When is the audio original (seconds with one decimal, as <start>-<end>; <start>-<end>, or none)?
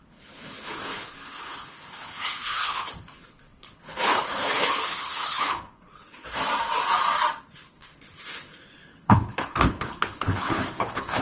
6.4-7.5